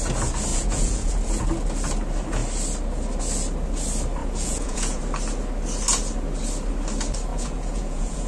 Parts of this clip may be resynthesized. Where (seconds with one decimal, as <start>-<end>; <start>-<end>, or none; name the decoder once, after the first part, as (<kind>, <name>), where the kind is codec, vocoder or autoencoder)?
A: 0.5-1.1 (vocoder, Vocos); 4.2-5.0; 7.3-8.3